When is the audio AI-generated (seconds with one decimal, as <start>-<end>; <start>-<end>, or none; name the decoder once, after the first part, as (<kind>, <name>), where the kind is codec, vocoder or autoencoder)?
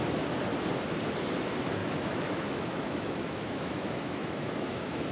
1.8-5.1 (autoencoder, DAC-VAE)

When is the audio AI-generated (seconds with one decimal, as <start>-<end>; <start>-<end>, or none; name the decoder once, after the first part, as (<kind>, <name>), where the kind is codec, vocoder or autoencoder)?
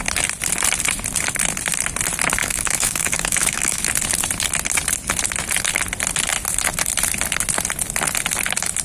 2.4-3.8 (autoencoder, DAC-VAE)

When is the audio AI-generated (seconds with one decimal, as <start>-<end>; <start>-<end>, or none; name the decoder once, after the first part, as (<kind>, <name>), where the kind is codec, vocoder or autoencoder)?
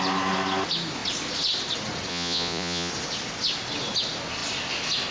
2.1-2.9 (vocoder, Vocos)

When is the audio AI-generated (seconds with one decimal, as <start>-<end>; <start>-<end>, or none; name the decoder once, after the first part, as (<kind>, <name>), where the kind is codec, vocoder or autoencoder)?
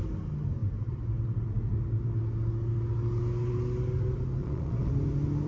4.4-4.9 (vocoder, Vocos)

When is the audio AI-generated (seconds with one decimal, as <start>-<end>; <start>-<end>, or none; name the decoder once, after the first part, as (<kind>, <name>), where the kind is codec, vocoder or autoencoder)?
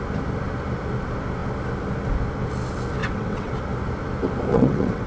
3.0-3.5 (vocoder, WaveNeXt); 4.5-5.1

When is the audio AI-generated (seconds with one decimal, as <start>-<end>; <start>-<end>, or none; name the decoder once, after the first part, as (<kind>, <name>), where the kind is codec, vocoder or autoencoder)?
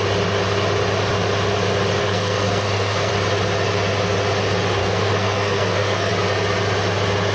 2.0-3.1 (codec, SNAC); 4.8-6.1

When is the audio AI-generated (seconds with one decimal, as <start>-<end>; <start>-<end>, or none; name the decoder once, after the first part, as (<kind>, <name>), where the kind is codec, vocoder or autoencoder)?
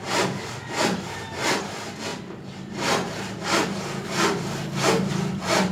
none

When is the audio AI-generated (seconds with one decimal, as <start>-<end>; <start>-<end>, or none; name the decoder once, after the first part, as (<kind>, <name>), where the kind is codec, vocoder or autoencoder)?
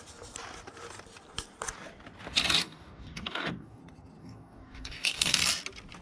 2.6-3.8 (codec, DAC); 4.2-5.4